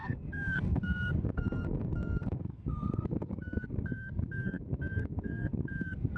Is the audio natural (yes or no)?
no